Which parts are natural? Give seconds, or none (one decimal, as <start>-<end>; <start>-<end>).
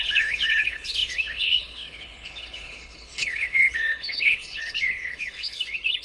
none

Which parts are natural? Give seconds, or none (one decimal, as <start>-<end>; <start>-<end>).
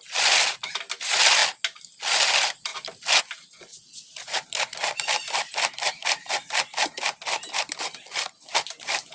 0.0-9.1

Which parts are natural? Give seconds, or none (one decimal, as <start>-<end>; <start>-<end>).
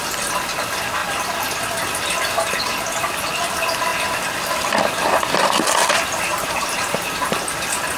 0.0-1.0; 1.6-6.3; 7.2-8.0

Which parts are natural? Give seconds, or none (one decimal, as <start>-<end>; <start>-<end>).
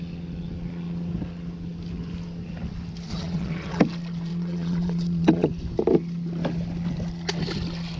0.0-3.1; 3.8-4.3; 5.5-8.0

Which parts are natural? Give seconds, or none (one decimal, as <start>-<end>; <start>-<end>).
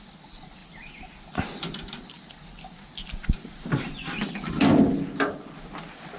0.0-6.2